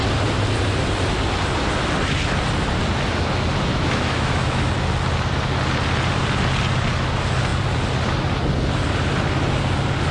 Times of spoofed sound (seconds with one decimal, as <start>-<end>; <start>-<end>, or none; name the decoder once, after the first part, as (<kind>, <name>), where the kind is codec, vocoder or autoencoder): 3.7-4.7 (autoencoder, DAC-VAE)